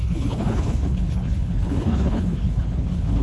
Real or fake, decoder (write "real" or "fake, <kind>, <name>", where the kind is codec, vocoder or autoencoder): fake, codec, HILCodec